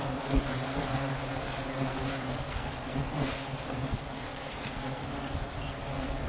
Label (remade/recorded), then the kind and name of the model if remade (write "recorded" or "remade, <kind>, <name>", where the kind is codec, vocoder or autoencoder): remade, codec, SNAC